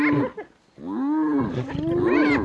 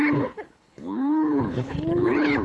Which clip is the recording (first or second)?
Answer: first